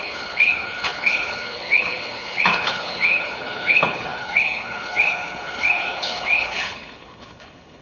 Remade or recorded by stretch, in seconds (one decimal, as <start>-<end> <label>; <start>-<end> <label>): 0.0-7.8 remade